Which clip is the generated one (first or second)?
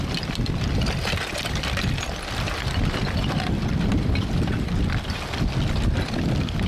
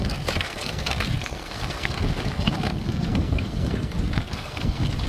second